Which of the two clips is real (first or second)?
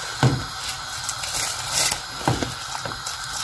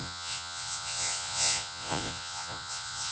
first